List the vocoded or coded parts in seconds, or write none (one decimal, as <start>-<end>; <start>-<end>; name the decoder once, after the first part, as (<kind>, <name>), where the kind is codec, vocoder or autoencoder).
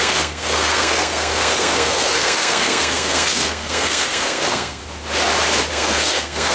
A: 0.0-4.8 (codec, SNAC); 5.7-6.5